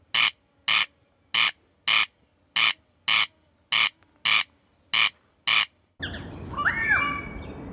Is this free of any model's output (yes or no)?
yes